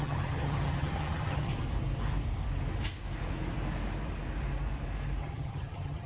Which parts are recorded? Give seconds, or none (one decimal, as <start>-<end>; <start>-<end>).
1.5-5.2